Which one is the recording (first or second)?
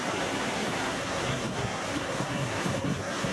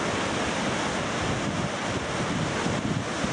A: second